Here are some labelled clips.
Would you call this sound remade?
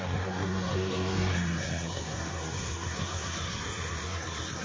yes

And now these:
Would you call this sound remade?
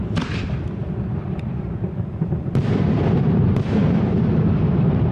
yes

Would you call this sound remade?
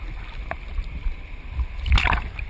no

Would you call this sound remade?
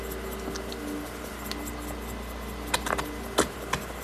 no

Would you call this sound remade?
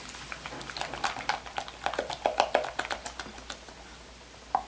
no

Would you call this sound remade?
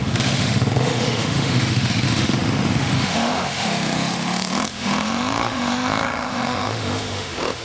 yes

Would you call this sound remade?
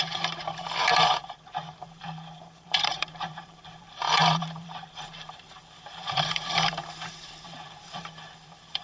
yes